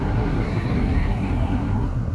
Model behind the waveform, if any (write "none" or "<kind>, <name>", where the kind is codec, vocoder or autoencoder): codec, SNAC